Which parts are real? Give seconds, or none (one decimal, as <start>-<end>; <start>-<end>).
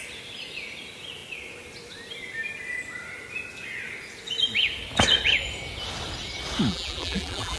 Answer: 0.0-6.7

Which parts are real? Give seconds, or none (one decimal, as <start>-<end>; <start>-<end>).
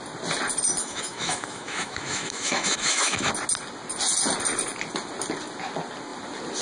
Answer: 0.0-0.8; 3.3-6.6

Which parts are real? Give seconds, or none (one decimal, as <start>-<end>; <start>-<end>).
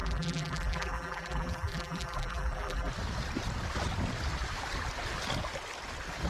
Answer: 2.9-6.3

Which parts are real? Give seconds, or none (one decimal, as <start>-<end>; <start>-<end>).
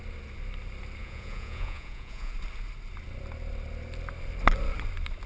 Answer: 0.0-1.0; 2.3-5.3